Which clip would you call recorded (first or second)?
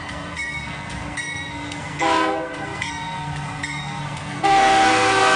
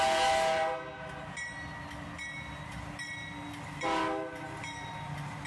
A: second